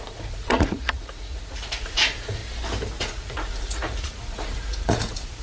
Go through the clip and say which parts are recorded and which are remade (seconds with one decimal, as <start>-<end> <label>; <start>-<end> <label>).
0.0-2.4 remade; 2.4-3.0 recorded; 3.0-5.4 remade